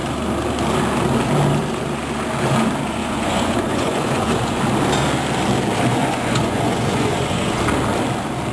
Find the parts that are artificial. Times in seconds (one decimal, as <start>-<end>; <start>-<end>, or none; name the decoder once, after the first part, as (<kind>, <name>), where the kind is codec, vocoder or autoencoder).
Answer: 3.0-4.6 (vocoder, Vocos); 5.9-7.6